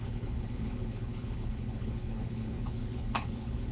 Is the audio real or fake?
fake